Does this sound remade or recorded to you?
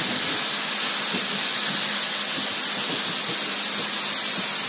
recorded